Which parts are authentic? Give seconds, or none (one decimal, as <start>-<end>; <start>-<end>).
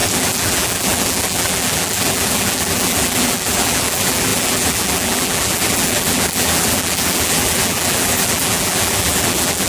none